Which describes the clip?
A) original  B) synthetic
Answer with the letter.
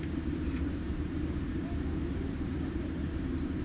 B